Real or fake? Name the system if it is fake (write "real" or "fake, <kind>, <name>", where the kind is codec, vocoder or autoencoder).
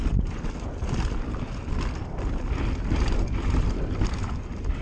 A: real